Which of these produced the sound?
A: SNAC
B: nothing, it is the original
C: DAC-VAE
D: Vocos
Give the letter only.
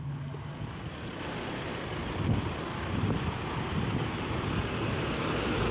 B